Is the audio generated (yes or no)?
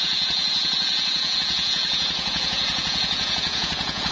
yes